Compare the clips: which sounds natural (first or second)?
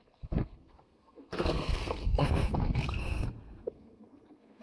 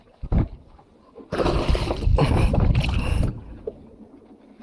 second